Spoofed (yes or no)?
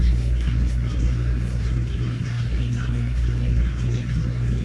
yes